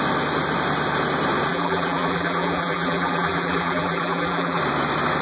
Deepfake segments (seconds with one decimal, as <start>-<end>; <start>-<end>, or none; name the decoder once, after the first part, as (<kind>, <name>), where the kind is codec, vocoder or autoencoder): 1.5-4.6 (vocoder, BigVGAN v2)